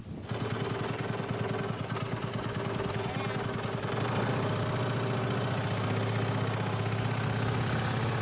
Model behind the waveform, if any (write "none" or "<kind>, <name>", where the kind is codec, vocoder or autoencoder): none